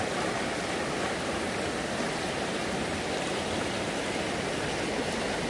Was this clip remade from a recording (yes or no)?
no